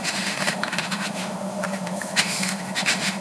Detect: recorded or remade remade